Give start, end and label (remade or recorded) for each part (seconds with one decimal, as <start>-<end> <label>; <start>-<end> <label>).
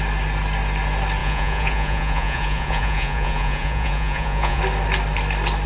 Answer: 0.0-1.2 recorded; 1.2-4.6 remade; 4.6-5.7 recorded